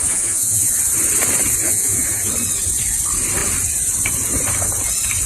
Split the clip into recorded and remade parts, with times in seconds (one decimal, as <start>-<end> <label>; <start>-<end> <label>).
0.0-0.7 remade; 0.7-1.6 recorded; 1.6-2.3 remade; 2.3-5.3 recorded